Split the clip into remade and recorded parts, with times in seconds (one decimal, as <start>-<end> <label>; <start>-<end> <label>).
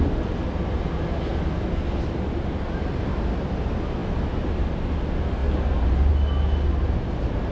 0.0-7.5 recorded